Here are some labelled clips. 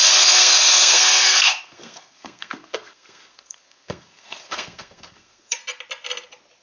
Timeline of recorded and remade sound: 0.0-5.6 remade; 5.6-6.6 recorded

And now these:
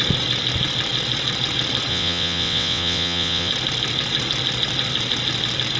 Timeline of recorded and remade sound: 0.0-1.9 recorded; 1.9-3.5 remade; 3.5-5.8 recorded

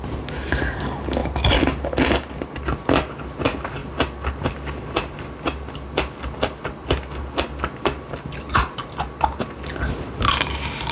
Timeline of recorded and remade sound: 0.0-10.9 recorded